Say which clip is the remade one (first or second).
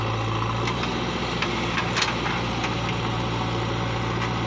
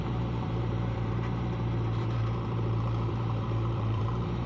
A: second